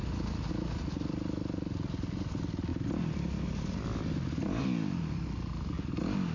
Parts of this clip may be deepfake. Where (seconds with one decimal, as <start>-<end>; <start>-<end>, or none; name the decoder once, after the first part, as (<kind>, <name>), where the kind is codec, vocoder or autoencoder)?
none